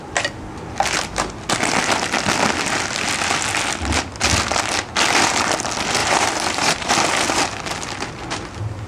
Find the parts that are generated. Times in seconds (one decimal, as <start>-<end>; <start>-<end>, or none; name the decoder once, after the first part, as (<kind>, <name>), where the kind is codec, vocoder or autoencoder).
6.0-6.9 (vocoder, BigVGAN v2)

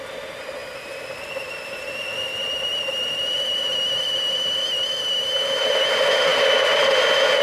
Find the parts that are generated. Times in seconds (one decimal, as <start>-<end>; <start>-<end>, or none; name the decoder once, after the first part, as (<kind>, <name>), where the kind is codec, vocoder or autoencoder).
0.6-5.0 (vocoder, BigVGAN v2); 6.3-6.9

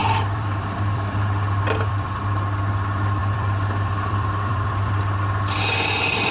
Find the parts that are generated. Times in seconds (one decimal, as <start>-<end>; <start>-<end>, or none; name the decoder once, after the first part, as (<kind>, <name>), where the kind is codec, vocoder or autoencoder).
0.0-2.2 (vocoder, BigVGAN v2); 3.2-5.0

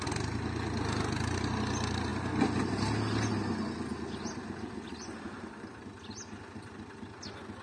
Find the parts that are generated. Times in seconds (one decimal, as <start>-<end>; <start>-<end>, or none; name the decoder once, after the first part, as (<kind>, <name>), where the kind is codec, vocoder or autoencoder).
none

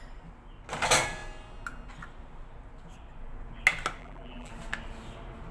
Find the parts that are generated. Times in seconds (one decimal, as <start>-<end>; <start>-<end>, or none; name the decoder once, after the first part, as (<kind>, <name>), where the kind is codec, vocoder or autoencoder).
4.0-4.5 (vocoder, BigVGAN v2)